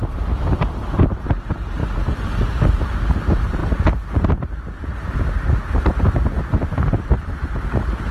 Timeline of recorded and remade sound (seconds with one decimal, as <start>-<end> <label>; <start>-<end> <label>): 0.0-1.8 remade; 1.8-2.8 recorded; 2.8-8.1 remade